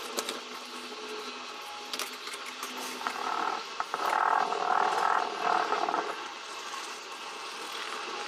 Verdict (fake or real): real